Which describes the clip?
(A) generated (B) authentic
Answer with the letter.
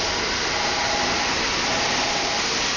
B